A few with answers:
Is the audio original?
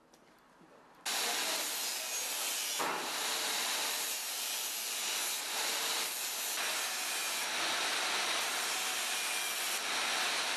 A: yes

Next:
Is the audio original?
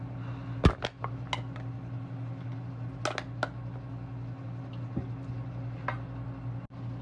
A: yes